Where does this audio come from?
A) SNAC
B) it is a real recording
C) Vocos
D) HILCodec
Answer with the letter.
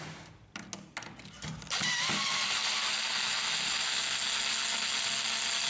B